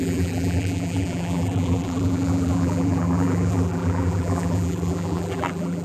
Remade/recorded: remade